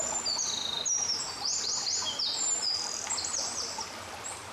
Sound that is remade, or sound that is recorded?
recorded